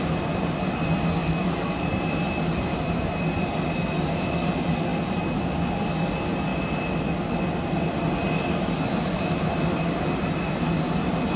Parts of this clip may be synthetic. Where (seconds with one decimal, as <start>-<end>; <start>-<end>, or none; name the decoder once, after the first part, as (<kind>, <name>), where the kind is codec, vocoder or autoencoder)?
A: 1.2-1.9 (autoencoder, DAC-VAE)